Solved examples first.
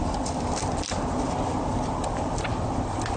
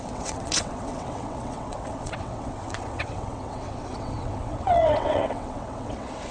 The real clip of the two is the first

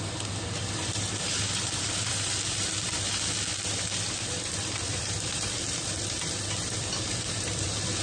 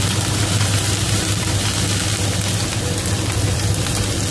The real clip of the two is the second